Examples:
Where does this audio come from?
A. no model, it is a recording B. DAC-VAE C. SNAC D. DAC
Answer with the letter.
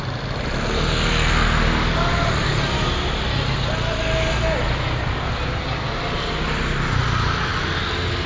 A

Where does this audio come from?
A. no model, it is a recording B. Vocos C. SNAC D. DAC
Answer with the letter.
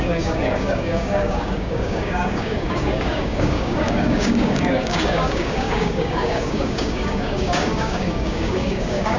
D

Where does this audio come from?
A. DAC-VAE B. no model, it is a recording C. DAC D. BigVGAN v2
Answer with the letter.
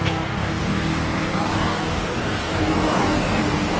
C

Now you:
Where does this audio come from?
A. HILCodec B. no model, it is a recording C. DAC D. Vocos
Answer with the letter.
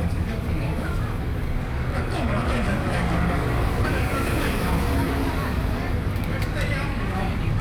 C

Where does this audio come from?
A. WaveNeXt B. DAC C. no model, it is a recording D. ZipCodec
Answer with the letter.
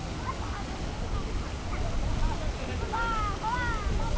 C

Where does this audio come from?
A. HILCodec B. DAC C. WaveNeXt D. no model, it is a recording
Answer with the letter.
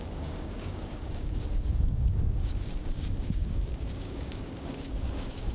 B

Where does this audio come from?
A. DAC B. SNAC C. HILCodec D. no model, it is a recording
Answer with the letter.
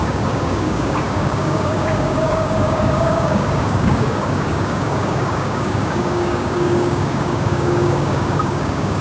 A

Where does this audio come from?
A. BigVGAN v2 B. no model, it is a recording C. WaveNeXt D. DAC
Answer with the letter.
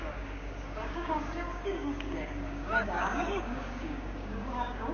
D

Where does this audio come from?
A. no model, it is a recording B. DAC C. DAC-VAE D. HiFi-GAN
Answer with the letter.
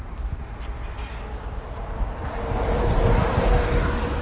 A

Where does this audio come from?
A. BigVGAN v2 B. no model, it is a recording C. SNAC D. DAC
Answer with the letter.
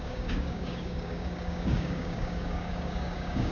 D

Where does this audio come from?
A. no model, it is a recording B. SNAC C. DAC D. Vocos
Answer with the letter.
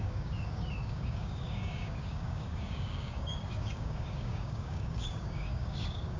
C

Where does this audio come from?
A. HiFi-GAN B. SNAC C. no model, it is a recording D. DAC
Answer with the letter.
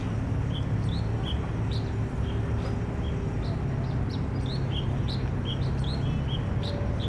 C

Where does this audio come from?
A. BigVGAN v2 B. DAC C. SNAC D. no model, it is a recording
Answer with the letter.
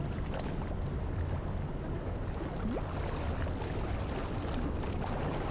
D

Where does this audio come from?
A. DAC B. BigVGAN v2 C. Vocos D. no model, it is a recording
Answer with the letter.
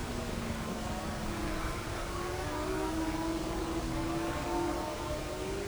A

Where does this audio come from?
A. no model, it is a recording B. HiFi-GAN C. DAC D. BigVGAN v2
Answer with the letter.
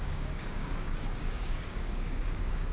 C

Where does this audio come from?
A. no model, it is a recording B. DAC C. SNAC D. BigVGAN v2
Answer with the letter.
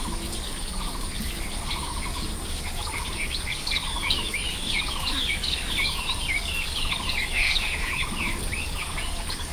B